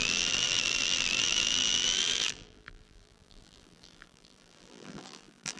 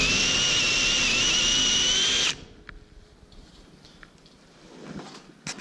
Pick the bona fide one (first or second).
second